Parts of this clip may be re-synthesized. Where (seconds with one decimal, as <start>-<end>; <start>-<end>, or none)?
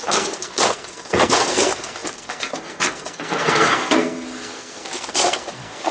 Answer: 0.0-5.9